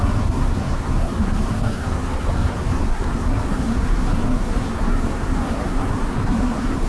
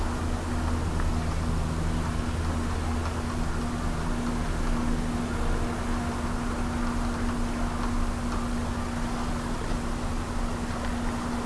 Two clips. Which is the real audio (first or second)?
second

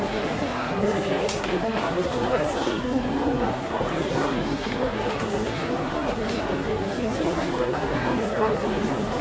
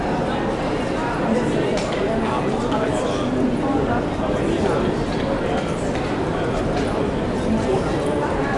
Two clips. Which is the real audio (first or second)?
second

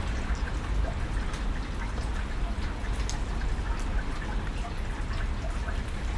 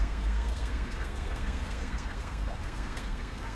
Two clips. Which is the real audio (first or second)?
first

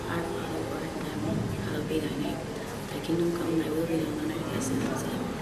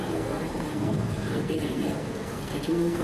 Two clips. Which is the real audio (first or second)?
first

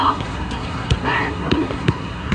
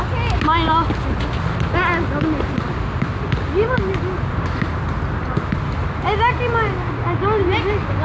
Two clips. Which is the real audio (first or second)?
second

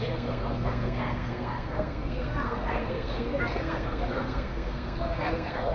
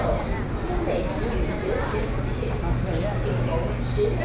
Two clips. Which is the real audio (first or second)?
second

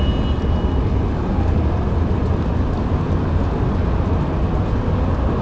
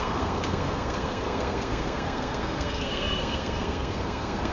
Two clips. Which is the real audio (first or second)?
first